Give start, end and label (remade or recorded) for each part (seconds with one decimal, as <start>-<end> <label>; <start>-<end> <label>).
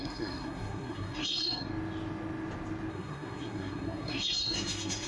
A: 0.0-1.7 remade; 1.7-2.9 recorded; 2.9-5.1 remade